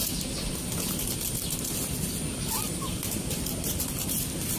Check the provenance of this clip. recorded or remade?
recorded